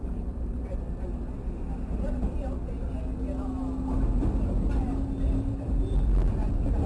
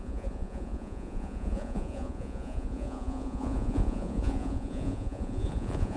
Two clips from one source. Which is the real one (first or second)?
first